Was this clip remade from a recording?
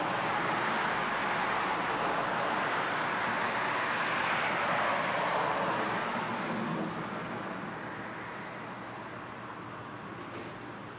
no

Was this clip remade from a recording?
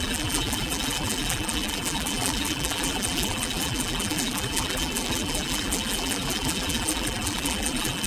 yes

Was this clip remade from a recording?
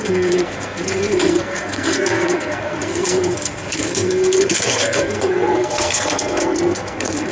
yes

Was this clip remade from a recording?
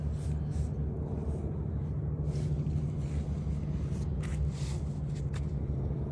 no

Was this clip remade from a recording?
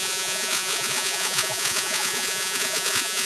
yes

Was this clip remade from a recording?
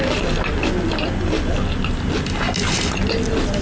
no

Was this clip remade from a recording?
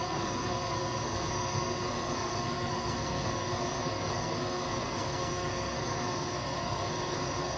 yes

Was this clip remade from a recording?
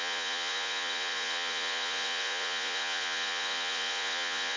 yes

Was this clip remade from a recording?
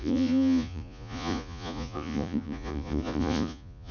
yes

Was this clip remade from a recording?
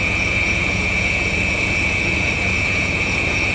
yes